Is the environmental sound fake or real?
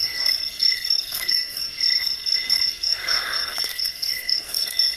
fake